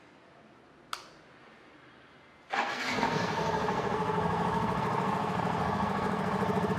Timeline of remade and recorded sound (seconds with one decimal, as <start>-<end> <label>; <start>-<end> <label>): 0.0-2.5 recorded; 2.5-6.8 remade

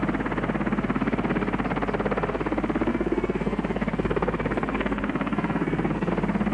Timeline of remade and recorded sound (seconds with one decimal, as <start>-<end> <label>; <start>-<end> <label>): 0.0-2.9 recorded; 2.9-6.1 remade; 6.1-6.5 recorded

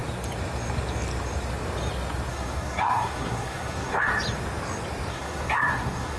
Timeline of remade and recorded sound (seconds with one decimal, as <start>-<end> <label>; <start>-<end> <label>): 0.0-2.3 recorded; 2.3-4.1 remade; 4.1-5.1 recorded; 5.1-6.2 remade